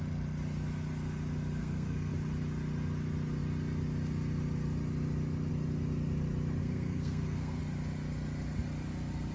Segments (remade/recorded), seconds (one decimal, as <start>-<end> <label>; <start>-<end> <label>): 0.0-1.6 recorded; 1.6-2.1 remade; 2.1-6.6 recorded; 6.6-7.6 remade; 7.6-9.3 recorded